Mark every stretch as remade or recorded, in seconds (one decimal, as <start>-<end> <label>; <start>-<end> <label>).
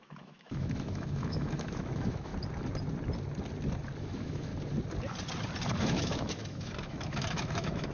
0.0-2.3 remade; 2.3-4.0 recorded; 4.0-4.5 remade; 4.5-5.8 recorded; 5.8-7.9 remade